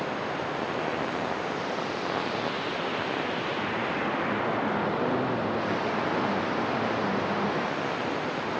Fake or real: real